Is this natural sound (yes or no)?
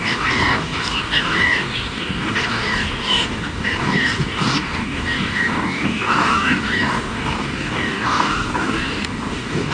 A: no